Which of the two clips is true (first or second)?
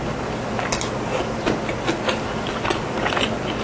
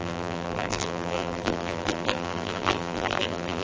first